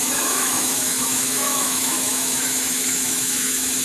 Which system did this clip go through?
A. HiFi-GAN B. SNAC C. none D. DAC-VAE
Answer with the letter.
D